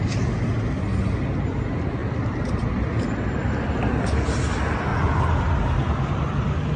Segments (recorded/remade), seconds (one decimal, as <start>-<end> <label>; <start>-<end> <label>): 0.0-2.0 recorded; 2.0-3.7 remade; 3.7-4.9 recorded; 4.9-6.8 remade